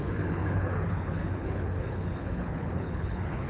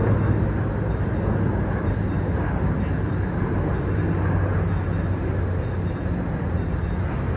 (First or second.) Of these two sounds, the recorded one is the second